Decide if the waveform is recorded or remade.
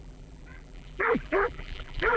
remade